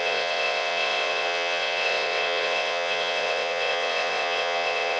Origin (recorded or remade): remade